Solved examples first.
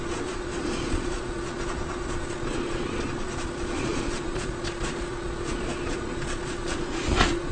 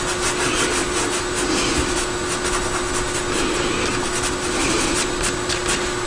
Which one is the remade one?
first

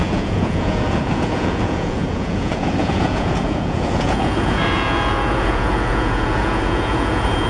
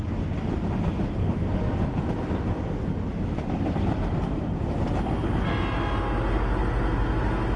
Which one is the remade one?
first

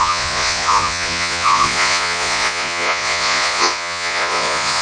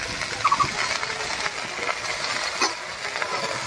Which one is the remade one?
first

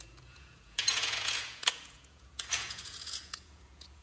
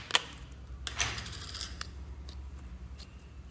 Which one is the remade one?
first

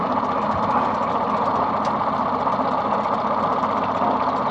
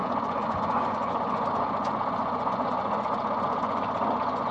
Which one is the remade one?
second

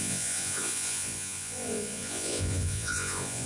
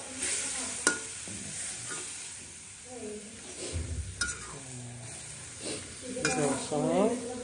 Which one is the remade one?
first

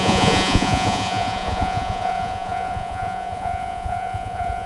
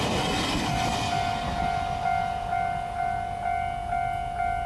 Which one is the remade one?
first